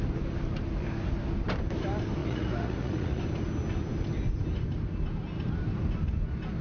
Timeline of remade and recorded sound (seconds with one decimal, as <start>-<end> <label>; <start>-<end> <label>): 0.0-2.2 recorded; 2.2-3.2 remade; 3.2-6.6 recorded